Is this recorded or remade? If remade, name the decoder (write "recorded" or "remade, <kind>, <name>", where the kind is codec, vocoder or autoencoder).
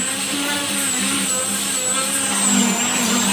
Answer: recorded